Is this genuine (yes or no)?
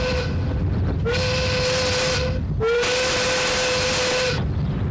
yes